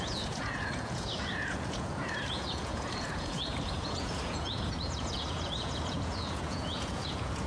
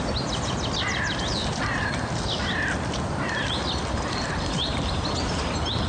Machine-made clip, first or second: first